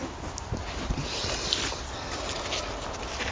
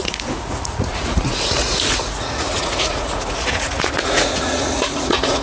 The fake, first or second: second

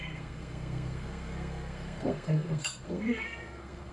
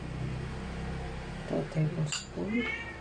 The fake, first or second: first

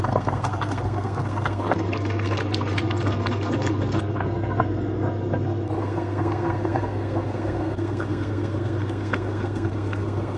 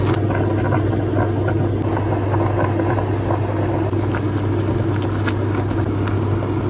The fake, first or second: first